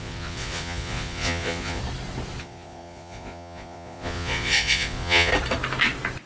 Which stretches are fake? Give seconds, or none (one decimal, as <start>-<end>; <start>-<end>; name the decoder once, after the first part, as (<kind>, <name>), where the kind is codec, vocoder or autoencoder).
0.0-1.8 (vocoder, Vocos); 2.4-5.3